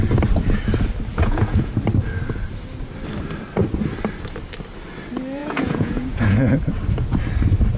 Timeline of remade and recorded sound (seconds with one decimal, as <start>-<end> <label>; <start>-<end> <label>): 0.0-1.1 recorded; 1.1-1.7 remade; 1.7-5.4 recorded; 5.4-6.5 remade; 6.5-7.8 recorded

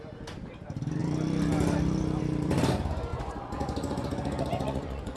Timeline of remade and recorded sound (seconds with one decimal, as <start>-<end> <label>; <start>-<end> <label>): 0.0-3.1 recorded; 3.1-5.2 remade

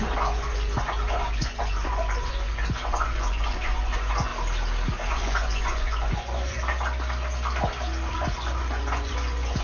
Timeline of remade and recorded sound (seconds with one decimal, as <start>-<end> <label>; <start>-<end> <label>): 0.0-4.3 remade; 4.3-5.1 recorded; 5.1-6.7 remade; 6.7-8.1 recorded; 8.1-9.6 remade

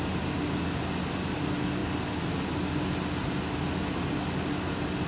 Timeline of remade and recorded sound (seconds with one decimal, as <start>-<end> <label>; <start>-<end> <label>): 0.0-5.1 recorded

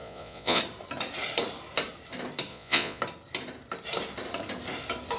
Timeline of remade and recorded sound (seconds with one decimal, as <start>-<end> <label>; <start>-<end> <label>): 0.0-0.6 remade; 0.6-2.5 recorded; 2.5-3.0 remade; 3.0-5.2 recorded